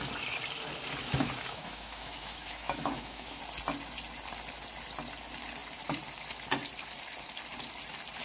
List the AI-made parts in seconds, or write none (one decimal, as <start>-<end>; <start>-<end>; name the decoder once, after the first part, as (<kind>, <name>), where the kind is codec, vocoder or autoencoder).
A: 1.0-3.4 (autoencoder, DAC-VAE)

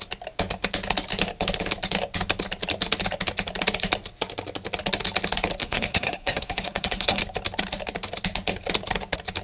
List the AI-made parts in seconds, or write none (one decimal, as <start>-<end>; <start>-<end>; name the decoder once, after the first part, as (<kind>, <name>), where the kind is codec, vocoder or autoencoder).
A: 5.6-7.2 (codec, SNAC)

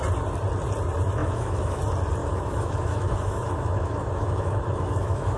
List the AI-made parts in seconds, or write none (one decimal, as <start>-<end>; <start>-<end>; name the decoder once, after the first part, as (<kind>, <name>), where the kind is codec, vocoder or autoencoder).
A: 1.2-1.8 (autoencoder, DAC-VAE); 2.2-5.4

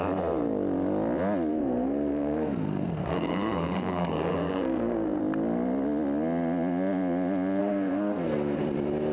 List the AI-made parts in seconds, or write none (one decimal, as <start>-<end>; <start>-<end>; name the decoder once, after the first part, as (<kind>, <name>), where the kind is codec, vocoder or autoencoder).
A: 1.5-5.2 (codec, SNAC); 7.6-8.6

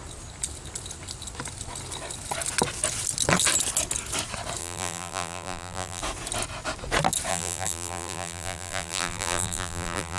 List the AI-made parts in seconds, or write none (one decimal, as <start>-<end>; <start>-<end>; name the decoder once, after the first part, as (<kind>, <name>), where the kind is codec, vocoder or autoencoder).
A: 4.6-6.0 (vocoder, BigVGAN v2); 7.3-10.2

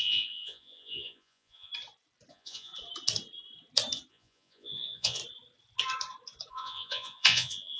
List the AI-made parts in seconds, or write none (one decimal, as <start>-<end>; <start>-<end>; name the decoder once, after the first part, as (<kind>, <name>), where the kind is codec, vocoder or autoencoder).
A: 0.0-1.7 (vocoder, Vocos); 2.3-2.7; 4.1-5.2; 6.5-7.8